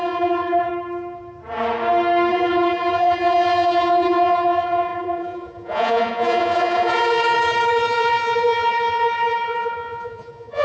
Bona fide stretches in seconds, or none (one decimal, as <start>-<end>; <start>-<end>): 0.7-2.3